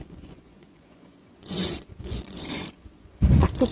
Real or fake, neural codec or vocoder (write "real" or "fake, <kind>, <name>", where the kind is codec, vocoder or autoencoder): fake, vocoder, Vocos